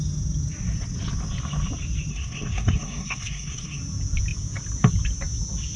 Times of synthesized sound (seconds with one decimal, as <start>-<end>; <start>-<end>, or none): 2.1-3.8